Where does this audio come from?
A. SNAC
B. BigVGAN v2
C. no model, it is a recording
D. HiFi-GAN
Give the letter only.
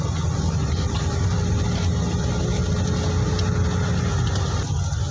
C